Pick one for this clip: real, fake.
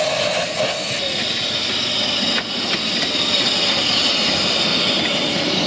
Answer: real